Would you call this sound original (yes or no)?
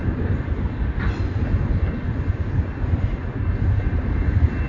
yes